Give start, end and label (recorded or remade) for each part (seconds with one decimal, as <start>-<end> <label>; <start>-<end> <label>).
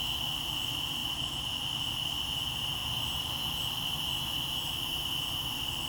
0.0-5.9 recorded